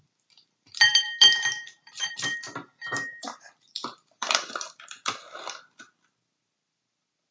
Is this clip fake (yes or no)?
yes